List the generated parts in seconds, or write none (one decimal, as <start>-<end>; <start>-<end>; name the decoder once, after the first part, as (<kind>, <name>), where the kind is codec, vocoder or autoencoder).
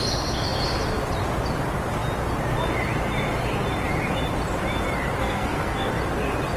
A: 5.2-5.9 (codec, SNAC)